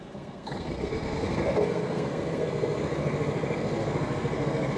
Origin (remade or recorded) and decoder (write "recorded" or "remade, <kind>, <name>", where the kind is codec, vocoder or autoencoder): remade, codec, SNAC